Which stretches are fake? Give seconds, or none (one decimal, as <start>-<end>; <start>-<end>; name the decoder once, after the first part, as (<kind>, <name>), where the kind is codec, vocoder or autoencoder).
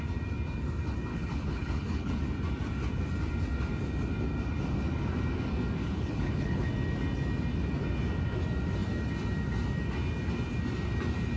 1.1-2.2 (codec, HILCodec); 5.8-6.7